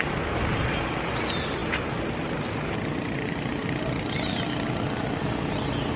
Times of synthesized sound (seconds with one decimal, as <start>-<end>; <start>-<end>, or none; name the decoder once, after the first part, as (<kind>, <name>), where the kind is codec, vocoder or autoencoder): none